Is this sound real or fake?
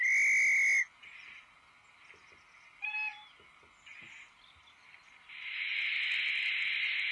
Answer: real